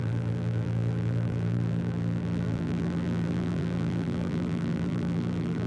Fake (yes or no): yes